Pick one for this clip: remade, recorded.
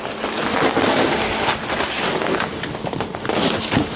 recorded